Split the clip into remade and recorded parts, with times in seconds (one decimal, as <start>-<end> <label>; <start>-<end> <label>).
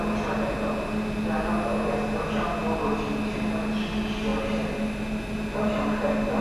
0.0-6.4 recorded